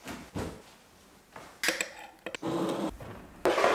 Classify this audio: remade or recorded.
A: recorded